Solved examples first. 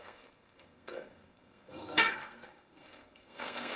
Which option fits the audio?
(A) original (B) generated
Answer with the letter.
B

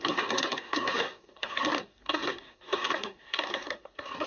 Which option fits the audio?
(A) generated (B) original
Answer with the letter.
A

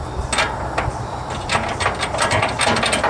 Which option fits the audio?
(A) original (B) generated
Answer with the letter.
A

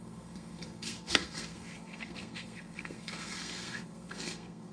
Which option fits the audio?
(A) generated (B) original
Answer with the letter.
A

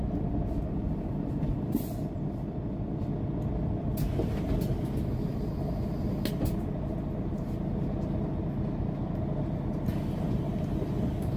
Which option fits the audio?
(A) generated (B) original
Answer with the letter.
B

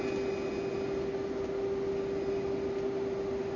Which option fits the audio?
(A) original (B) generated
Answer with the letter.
A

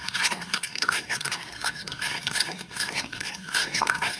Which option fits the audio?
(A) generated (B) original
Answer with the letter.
A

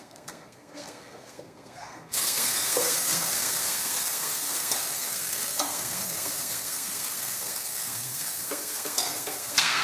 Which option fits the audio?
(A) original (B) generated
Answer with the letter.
B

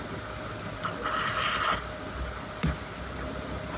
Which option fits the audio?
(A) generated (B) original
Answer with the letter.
B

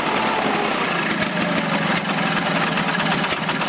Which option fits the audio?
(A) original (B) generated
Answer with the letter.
A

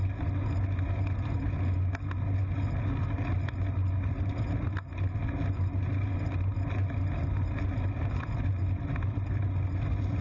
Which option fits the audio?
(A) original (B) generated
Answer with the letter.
A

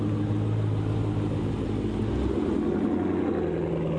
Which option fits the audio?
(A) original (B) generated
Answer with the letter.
A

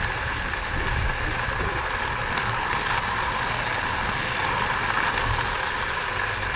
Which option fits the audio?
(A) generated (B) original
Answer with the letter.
B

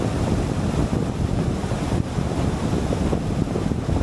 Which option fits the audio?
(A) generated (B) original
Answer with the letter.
B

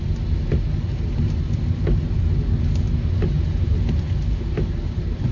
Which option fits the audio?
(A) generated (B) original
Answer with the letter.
B